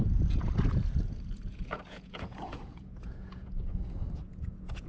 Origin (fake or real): fake